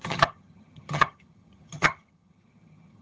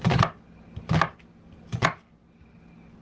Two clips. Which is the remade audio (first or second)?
first